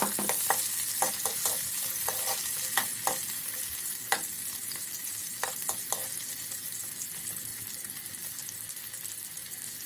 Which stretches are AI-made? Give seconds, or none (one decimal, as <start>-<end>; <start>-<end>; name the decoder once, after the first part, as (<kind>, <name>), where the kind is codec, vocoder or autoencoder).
none